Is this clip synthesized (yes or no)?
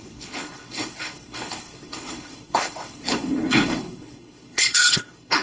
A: yes